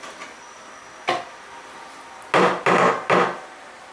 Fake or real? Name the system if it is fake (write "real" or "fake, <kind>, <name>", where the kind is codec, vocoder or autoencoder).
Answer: real